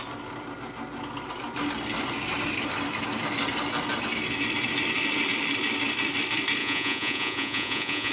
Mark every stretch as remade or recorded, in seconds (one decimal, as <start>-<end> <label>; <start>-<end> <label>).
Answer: 0.0-6.6 recorded; 6.6-8.1 remade